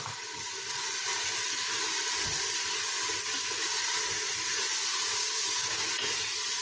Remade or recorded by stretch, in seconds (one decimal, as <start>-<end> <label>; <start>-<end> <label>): 0.0-5.1 recorded; 5.1-5.9 remade; 5.9-6.6 recorded